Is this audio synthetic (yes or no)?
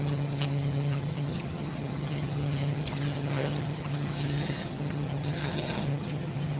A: yes